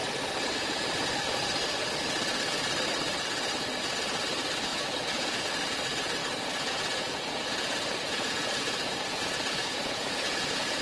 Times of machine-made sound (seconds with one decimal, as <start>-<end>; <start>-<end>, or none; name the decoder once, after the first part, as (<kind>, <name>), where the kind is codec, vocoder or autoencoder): 4.7-5.5 (vocoder, Vocos); 6.2-10.8